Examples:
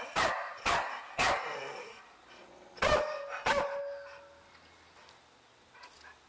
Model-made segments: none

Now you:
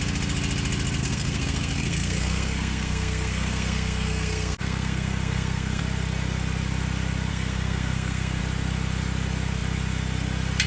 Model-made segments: 1.0-5.8; 7.3-8.4

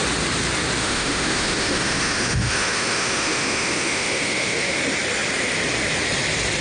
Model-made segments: 0.8-4.8

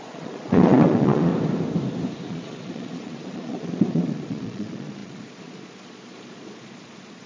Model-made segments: 0.0-1.3; 2.3-7.3

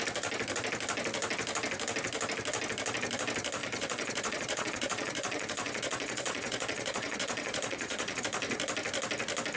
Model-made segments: 3.6-8.2

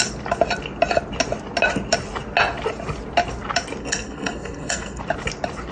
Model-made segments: 3.8-5.0

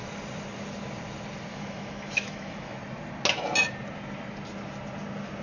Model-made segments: 1.5-2.8

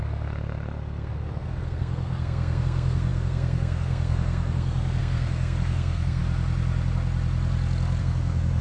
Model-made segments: 0.0-6.2; 8.0-8.6